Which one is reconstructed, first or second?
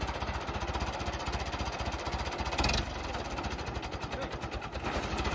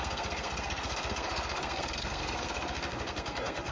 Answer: second